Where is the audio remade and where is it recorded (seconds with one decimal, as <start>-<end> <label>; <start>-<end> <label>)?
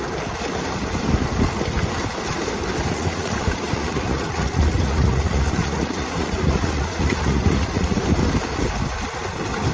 0.0-2.9 recorded; 2.9-8.0 remade; 8.0-9.7 recorded